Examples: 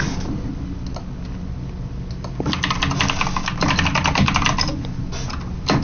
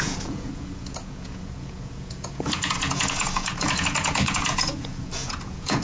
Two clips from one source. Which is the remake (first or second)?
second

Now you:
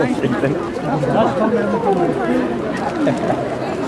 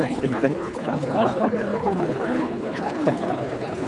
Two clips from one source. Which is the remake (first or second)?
second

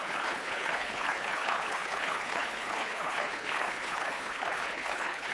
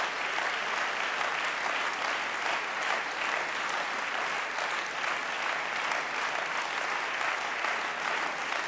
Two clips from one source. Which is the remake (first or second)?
first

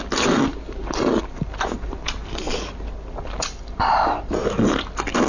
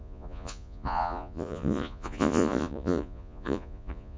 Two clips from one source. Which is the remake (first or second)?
second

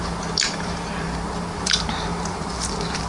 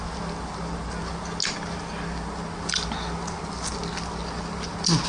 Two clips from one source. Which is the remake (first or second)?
first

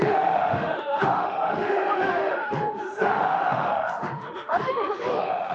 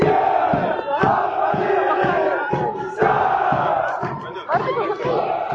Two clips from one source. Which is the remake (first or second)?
first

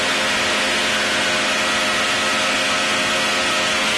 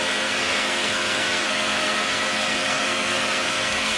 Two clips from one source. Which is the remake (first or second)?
second